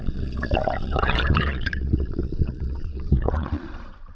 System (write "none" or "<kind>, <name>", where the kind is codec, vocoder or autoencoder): vocoder, Vocos